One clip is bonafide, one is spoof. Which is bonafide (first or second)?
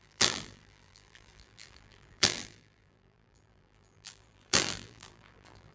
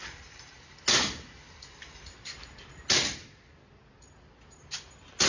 second